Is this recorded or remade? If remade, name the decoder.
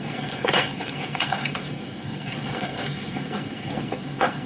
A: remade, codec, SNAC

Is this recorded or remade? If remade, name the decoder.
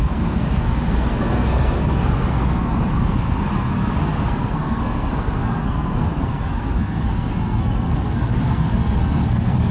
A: remade, codec, SNAC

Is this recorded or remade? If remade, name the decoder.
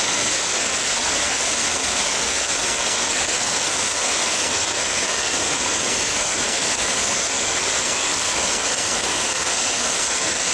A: remade, codec, SNAC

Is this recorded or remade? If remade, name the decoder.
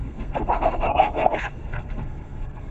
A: remade, codec, SNAC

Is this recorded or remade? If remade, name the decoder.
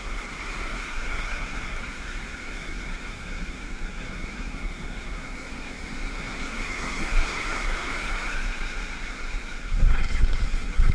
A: remade, codec, SNAC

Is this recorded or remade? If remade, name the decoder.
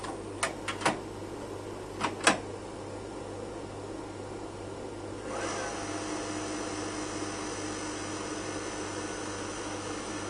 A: recorded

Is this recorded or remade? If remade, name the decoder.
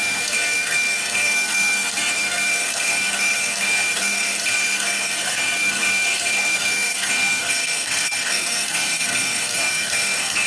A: remade, codec, SNAC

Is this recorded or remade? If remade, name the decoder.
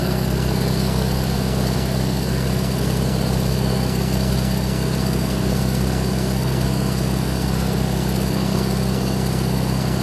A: remade, codec, SNAC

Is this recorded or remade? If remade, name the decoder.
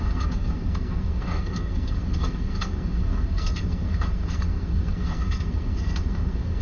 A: remade, codec, SNAC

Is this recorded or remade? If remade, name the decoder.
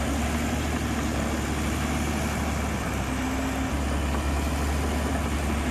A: recorded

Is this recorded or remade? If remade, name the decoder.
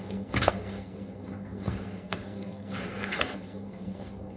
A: remade, codec, SNAC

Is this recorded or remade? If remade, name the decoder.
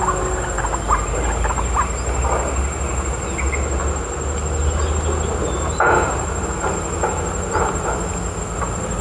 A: recorded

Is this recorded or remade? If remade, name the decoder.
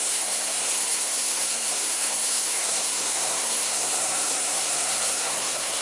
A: remade, codec, SNAC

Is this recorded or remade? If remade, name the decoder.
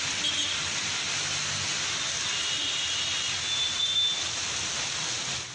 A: recorded